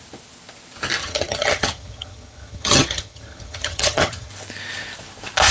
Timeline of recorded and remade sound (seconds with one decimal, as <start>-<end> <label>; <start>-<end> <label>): 0.0-1.0 recorded; 1.0-4.3 remade; 4.3-5.5 recorded